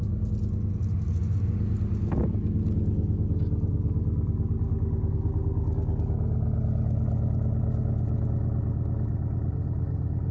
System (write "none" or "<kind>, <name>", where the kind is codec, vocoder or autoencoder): none